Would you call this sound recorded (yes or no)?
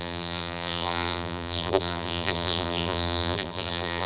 no